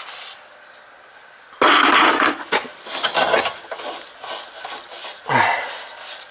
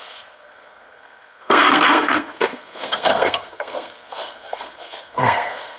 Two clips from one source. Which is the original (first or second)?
first